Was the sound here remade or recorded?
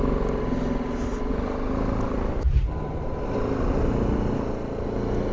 recorded